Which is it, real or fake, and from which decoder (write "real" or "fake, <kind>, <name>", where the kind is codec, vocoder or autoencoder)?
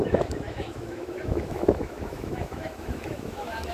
fake, autoencoder, DAC-VAE